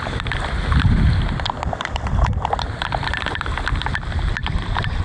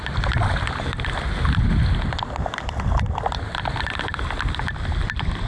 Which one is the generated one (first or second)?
first